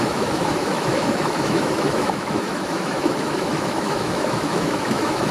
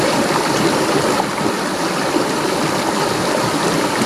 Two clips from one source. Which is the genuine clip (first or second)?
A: second